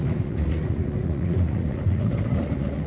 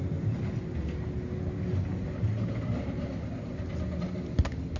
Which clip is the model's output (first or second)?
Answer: first